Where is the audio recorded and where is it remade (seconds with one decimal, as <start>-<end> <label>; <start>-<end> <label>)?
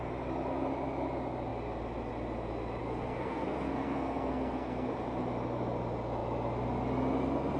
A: 0.0-2.8 recorded; 2.8-4.9 remade; 4.9-7.6 recorded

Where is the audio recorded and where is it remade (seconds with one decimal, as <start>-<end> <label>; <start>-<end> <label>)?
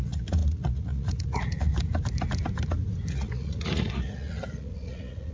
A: 0.0-1.7 remade; 1.7-3.1 recorded; 3.1-5.3 remade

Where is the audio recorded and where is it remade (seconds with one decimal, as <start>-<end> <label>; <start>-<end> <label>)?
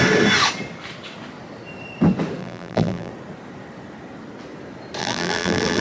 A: 0.0-2.4 recorded; 2.4-3.1 remade; 3.1-5.0 recorded; 5.0-5.8 remade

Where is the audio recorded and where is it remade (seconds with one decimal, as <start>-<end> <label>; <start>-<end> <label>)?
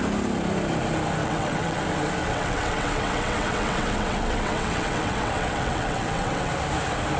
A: 0.0-1.2 recorded; 1.2-1.8 remade; 1.8-2.2 recorded; 2.2-6.5 remade; 6.5-7.2 recorded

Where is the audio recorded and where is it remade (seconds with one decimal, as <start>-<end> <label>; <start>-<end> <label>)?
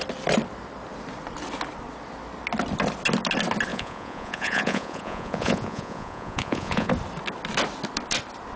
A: 0.0-3.7 recorded; 3.7-6.9 remade; 6.9-8.6 recorded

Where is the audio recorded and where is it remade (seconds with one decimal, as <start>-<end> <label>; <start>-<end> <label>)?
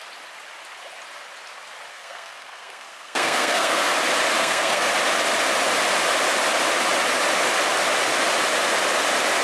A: 0.0-1.9 recorded; 1.9-3.9 remade; 3.9-4.4 recorded; 4.4-4.9 remade; 4.9-9.4 recorded